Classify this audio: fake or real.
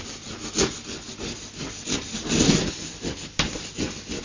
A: real